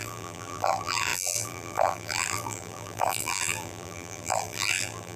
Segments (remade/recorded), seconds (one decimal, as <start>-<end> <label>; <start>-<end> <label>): 0.0-5.2 remade